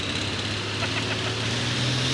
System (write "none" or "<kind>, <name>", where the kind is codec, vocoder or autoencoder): none